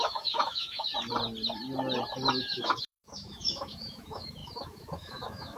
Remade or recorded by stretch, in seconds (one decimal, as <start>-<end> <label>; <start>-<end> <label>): 0.0-0.9 remade; 0.9-2.4 recorded; 2.4-5.6 remade